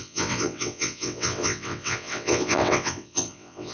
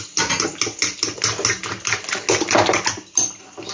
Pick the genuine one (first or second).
second